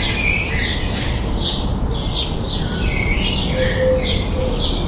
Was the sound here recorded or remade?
recorded